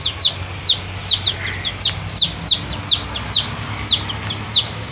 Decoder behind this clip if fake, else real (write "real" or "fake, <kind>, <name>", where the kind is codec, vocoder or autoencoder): real